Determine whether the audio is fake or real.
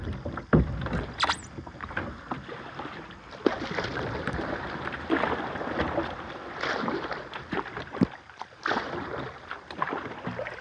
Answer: real